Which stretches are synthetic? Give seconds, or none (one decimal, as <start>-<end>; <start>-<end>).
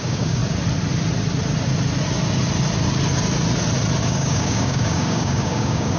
0.0-0.4; 4.0-6.0